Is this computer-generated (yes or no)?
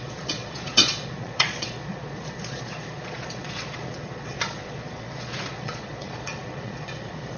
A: yes